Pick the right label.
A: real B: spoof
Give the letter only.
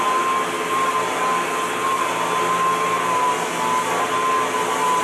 A